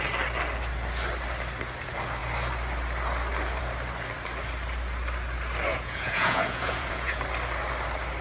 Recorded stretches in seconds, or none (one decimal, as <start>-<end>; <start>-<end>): 0.0-5.7; 7.2-8.2